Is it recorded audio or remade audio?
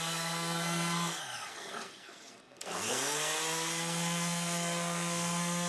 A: remade